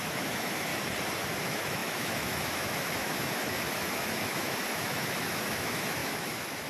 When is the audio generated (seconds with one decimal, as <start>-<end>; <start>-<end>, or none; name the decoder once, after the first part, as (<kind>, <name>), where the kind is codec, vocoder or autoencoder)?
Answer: 0.0-0.7 (autoencoder, DAC-VAE); 1.4-6.7